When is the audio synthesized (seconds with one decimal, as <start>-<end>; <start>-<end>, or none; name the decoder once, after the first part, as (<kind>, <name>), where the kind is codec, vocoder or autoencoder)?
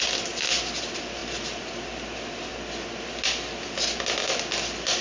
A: none